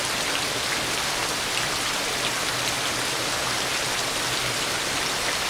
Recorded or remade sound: remade